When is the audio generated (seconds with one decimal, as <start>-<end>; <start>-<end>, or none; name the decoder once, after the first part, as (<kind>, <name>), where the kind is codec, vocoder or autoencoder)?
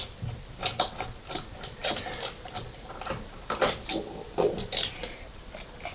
none